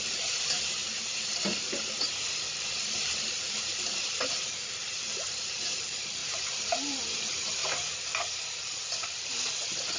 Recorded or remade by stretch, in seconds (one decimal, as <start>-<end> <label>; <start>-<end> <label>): 0.0-7.6 remade; 7.6-10.0 recorded